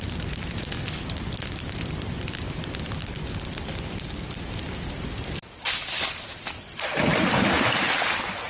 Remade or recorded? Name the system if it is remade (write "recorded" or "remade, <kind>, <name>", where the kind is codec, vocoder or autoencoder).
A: remade, vocoder, BigVGAN v2